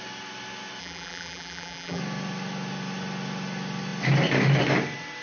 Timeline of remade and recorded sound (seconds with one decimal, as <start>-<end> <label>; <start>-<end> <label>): 0.0-0.8 recorded; 0.8-2.0 remade; 2.0-5.2 recorded